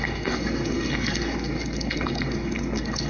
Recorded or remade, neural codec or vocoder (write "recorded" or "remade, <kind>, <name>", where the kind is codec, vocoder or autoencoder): remade, codec, SNAC